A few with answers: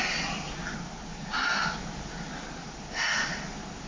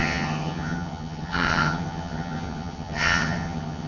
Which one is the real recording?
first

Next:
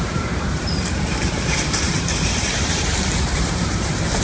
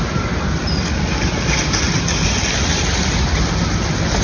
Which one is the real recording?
second